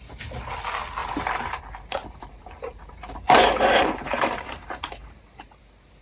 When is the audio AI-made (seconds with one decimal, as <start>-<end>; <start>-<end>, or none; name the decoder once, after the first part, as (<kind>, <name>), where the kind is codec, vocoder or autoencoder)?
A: 1.0-1.6 (vocoder, BigVGAN v2); 2.0-5.6